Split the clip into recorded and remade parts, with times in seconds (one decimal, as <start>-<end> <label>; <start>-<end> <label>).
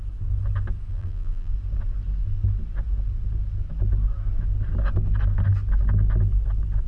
0.0-0.9 recorded; 0.9-1.5 remade; 1.5-6.9 recorded